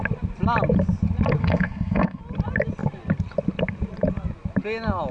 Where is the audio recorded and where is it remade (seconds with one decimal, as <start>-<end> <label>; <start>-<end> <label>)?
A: 0.0-1.4 recorded; 1.4-2.2 remade; 2.2-5.1 recorded